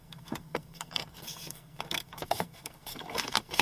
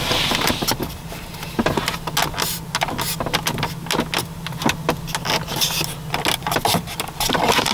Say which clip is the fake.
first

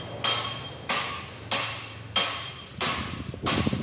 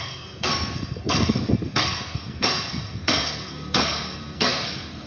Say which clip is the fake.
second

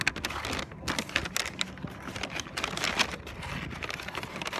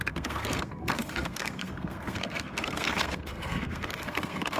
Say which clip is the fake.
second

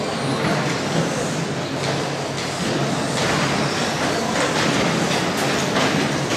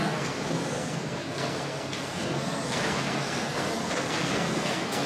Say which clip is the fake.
second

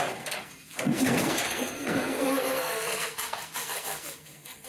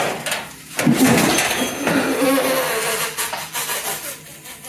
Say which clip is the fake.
first